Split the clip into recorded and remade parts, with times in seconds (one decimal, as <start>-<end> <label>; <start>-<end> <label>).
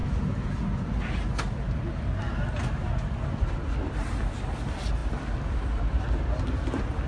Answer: 0.0-7.1 recorded